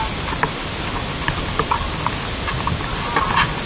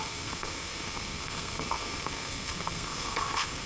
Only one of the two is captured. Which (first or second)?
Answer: first